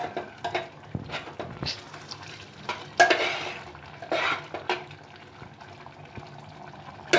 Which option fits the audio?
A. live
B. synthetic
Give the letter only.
A